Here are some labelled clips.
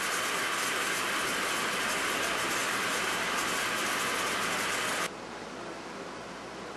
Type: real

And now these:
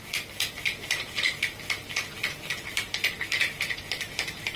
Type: real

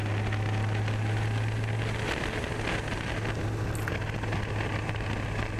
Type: real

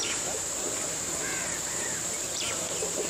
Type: fake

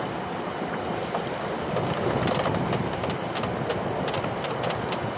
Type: real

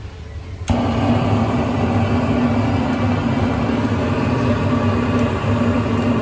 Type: real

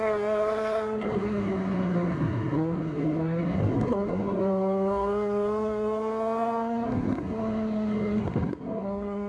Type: fake